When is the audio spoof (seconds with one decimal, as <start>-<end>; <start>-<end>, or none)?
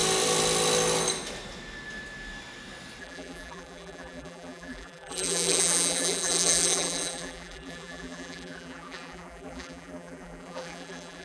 3.0-11.2